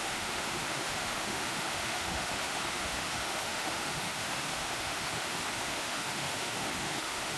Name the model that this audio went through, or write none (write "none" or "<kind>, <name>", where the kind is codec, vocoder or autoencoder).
autoencoder, DAC-VAE